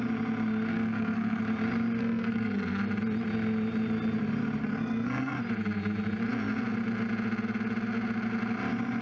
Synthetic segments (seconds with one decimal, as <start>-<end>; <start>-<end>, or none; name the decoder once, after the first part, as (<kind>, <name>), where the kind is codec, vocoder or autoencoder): 0.7-1.4 (codec, SNAC); 2.0-2.8; 4.6-5.4